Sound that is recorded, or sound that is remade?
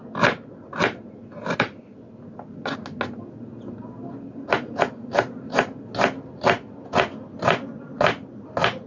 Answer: recorded